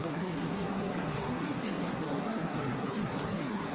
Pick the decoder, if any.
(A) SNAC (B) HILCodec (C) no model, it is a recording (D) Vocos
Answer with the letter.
A